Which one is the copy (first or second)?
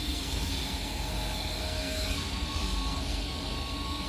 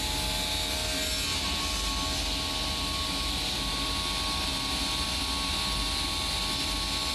first